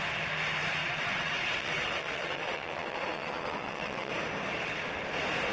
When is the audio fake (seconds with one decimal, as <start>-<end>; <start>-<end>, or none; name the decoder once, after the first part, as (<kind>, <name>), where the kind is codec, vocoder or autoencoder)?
0.8-4.1 (vocoder, WaveNeXt)